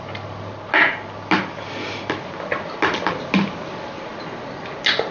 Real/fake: real